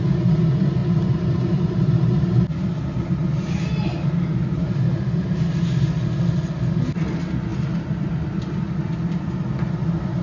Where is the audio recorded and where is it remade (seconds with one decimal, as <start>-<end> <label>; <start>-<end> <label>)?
0.0-0.8 recorded; 0.8-2.3 remade; 2.3-7.5 recorded; 7.5-8.6 remade; 8.6-10.2 recorded

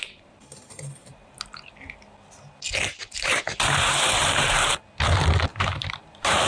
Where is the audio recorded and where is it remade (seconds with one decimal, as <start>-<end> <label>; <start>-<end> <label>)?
0.0-1.7 remade; 1.7-3.0 recorded; 3.0-4.7 remade; 4.7-5.5 recorded; 5.5-6.5 remade